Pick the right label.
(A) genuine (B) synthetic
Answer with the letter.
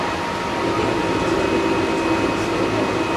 A